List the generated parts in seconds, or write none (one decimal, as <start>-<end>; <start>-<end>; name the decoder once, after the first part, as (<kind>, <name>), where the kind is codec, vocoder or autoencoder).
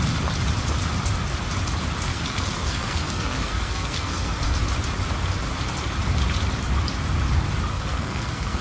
2.1-4.6 (codec, SNAC); 7.7-8.6